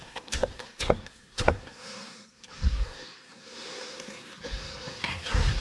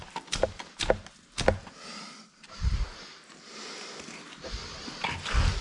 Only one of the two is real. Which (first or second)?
second